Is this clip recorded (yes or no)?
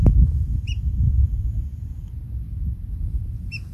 no